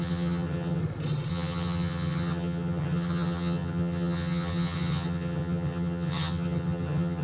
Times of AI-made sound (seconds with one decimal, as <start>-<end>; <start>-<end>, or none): 0.0-0.8; 1.3-7.2